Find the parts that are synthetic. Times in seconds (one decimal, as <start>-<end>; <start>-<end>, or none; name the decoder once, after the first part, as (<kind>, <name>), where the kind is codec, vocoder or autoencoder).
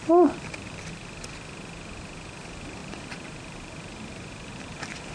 0.0-0.8 (vocoder, BigVGAN v2); 2.8-5.1